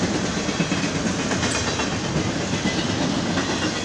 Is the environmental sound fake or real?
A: real